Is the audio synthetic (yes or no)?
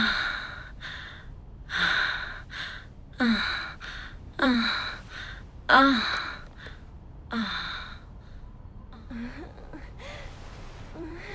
yes